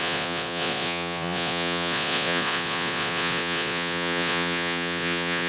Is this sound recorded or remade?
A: remade